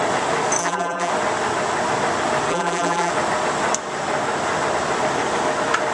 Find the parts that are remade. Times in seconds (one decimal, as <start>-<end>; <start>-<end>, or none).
0.6-1.1; 2.5-3.1